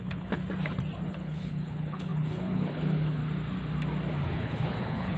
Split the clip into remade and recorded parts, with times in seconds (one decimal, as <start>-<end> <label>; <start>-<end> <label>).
0.0-0.4 remade; 0.4-1.1 recorded; 1.1-3.2 remade; 3.2-4.2 recorded; 4.2-5.2 remade